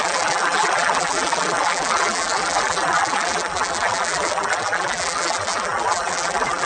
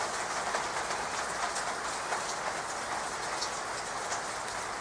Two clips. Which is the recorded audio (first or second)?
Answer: second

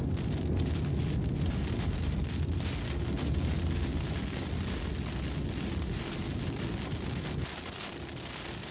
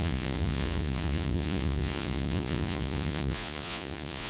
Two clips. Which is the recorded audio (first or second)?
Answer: first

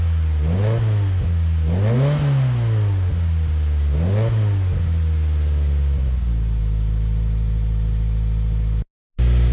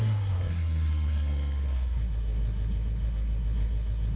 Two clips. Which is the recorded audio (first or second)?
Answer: first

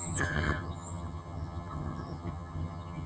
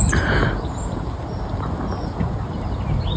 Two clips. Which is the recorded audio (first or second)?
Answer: second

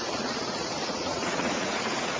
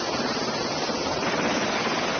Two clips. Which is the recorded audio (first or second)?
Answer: second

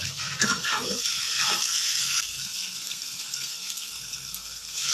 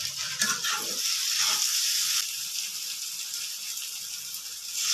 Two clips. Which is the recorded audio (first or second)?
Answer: second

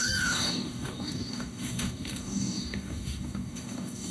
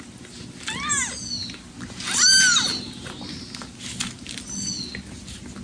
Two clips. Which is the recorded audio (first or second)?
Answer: second